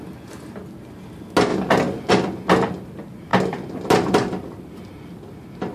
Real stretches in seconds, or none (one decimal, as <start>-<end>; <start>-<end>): 0.0-5.7